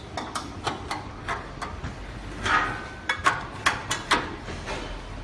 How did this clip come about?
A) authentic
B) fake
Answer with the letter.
A